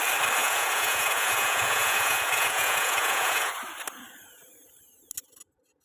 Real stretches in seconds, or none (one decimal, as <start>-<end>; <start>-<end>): 0.0-0.4; 3.5-5.8

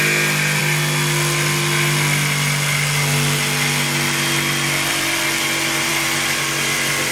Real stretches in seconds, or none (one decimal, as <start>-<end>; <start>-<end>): 0.0-5.9

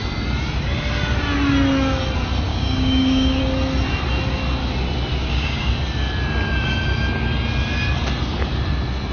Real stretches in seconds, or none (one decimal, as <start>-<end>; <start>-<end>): 0.0-2.5; 3.4-5.2; 5.7-9.1

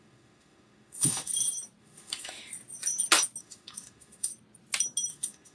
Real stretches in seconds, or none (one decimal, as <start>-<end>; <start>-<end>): 1.3-1.8; 2.5-3.4; 4.3-5.1

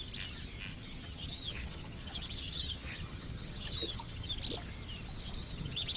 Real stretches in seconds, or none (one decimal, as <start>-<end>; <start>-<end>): 0.0-0.7; 4.3-5.4